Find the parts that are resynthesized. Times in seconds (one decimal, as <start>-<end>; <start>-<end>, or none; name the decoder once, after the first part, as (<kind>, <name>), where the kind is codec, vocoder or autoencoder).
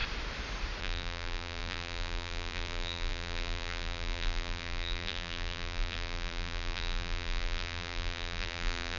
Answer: 0.8-9.0 (vocoder, BigVGAN v2)